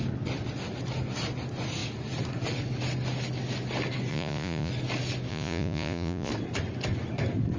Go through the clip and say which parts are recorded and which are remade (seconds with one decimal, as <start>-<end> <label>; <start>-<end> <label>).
0.0-4.1 recorded; 4.1-4.7 remade; 4.7-5.3 recorded; 5.3-6.3 remade; 6.3-7.6 recorded